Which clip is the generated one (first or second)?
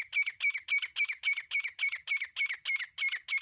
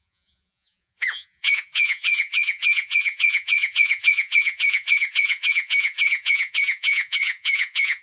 second